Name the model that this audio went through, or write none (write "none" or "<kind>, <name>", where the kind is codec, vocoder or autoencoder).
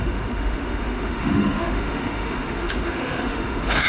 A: autoencoder, DAC-VAE